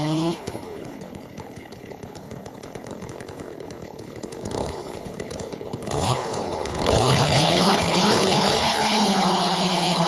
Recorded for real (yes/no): no